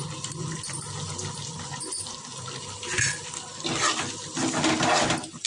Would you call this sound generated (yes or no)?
no